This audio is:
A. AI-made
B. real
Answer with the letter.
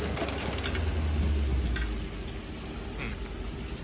B